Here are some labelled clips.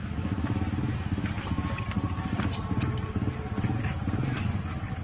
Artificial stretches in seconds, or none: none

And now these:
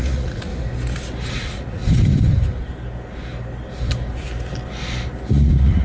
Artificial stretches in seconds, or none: 0.0-0.5 (vocoder, Vocos); 1.3-1.8; 5.3-5.8

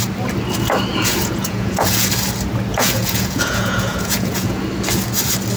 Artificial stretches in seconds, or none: 0.9-2.1 (vocoder, Vocos); 2.7-4.6

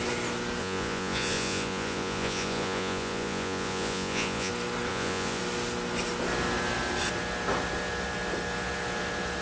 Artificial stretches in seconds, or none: 0.6-4.5 (vocoder, Vocos); 4.9-5.4

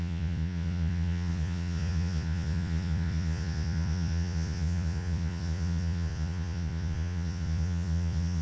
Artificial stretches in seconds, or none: 0.0-8.4 (vocoder, Vocos)

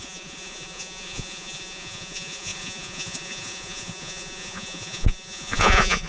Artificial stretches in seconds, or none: 0.0-6.1 (vocoder, Vocos)

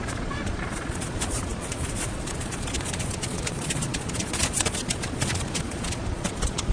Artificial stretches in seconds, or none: 0.0-6.7 (vocoder, Vocos)